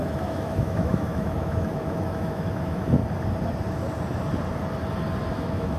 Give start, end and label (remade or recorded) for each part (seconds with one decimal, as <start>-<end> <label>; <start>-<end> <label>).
0.0-3.0 remade; 3.0-5.3 recorded; 5.3-5.8 remade